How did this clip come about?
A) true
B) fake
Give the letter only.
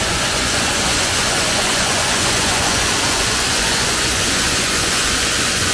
B